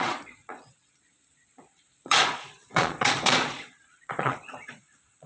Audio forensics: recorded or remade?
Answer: remade